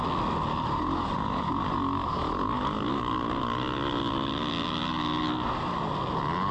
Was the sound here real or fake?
real